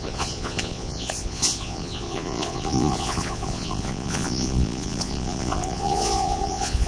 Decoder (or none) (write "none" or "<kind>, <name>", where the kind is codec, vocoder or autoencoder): vocoder, Vocos